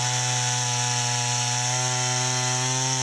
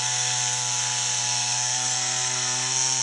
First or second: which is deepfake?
second